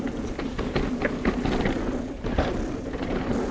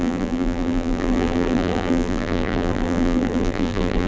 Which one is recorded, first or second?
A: first